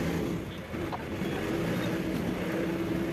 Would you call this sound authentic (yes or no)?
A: yes